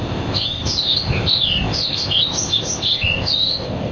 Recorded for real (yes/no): no